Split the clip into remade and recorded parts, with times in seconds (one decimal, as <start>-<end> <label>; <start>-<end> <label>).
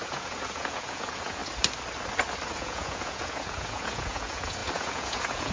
0.0-1.4 remade; 1.4-2.5 recorded; 2.5-5.5 remade